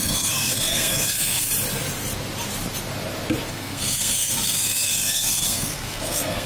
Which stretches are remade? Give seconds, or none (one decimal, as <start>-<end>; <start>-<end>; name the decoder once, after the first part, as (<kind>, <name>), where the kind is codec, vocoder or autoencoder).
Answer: 0.0-1.5 (codec, SNAC); 3.5-6.5